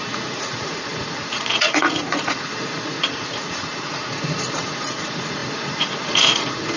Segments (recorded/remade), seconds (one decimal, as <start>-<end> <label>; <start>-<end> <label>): 0.0-6.8 remade

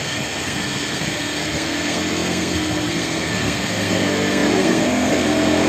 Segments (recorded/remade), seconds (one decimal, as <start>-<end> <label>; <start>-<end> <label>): 0.0-5.7 remade

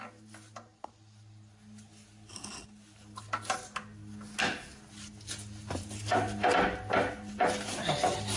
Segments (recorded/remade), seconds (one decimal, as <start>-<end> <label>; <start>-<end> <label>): 0.0-8.4 recorded

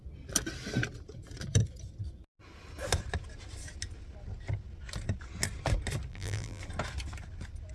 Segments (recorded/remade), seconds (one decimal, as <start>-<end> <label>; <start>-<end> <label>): 0.0-6.1 recorded; 6.1-6.6 remade; 6.6-7.7 recorded

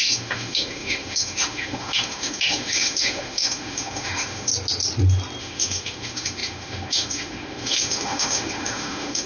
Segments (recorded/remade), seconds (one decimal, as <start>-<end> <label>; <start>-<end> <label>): 0.0-4.5 remade; 4.5-5.4 recorded; 5.4-9.3 remade

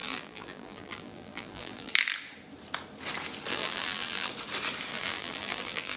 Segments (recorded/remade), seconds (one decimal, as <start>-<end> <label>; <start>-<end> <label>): 0.0-1.9 remade; 1.9-3.5 recorded; 3.5-4.3 remade; 4.3-4.9 recorded; 4.9-6.0 remade

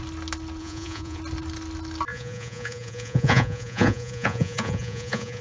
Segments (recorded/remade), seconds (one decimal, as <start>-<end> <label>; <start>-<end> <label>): 0.0-0.6 recorded; 0.6-1.2 remade; 1.2-2.1 recorded; 2.1-5.4 remade

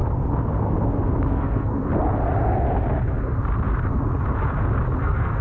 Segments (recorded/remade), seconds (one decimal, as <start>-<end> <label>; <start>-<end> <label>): 0.0-1.3 recorded; 1.3-1.8 remade; 1.8-5.0 recorded; 5.0-5.4 remade